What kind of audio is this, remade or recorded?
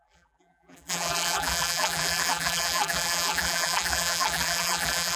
remade